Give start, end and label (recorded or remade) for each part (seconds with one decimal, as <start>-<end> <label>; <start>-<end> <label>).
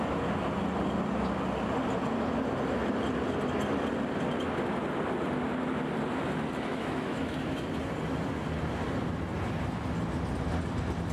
0.0-6.7 recorded; 6.7-7.7 remade; 7.7-11.1 recorded